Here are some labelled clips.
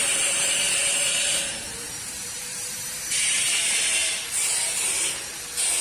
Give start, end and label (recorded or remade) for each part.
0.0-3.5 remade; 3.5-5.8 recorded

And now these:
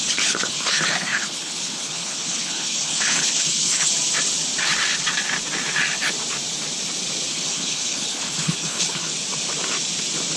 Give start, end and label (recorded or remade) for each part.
0.0-3.9 remade; 3.9-7.3 recorded; 7.3-9.1 remade; 9.1-10.4 recorded

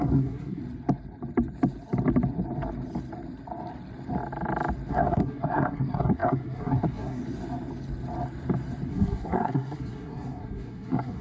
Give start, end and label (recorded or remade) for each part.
0.0-0.6 remade; 0.6-4.9 recorded; 4.9-7.2 remade; 7.2-8.9 recorded; 8.9-11.2 remade

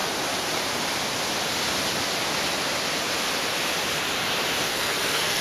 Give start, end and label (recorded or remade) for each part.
0.0-4.7 recorded; 4.7-5.4 remade

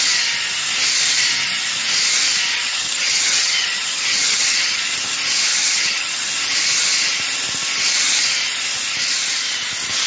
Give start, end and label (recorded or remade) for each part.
0.0-2.5 recorded; 2.5-4.8 remade; 4.8-5.5 recorded; 5.5-6.3 remade; 6.3-10.1 recorded